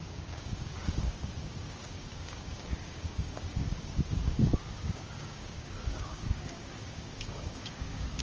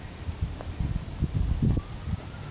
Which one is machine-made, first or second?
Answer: first